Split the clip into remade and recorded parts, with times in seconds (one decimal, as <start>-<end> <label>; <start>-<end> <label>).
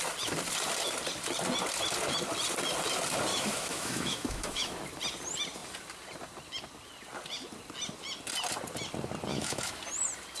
0.0-3.3 recorded; 3.3-4.7 remade; 4.7-9.3 recorded; 9.3-9.8 remade; 9.8-10.4 recorded